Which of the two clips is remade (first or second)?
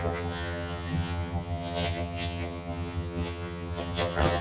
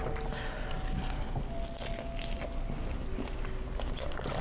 first